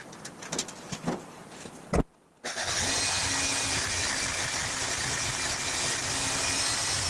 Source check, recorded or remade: recorded